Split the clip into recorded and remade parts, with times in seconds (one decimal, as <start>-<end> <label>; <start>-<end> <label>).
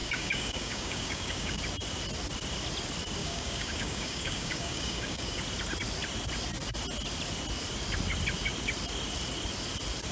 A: 0.0-1.6 remade; 1.6-3.2 recorded; 3.2-5.4 remade; 5.4-10.1 recorded